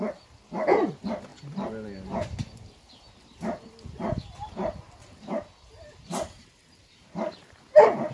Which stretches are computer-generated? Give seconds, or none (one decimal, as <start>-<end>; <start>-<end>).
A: none